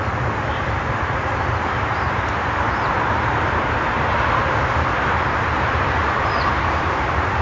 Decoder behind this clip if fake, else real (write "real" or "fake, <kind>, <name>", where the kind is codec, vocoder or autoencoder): fake, vocoder, BigVGAN v2